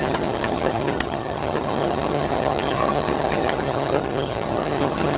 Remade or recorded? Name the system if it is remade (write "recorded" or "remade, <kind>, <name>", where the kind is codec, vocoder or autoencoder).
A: remade, vocoder, HiFi-GAN